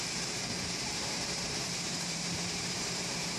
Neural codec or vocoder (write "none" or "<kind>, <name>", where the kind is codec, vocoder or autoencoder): vocoder, BigVGAN v2